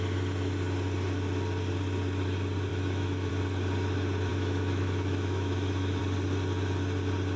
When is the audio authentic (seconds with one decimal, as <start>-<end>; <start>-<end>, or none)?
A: 0.0-2.7; 3.3-4.3; 6.0-7.4